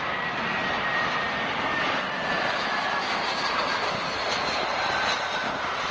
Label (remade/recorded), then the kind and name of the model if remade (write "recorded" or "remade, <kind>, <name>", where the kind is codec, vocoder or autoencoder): recorded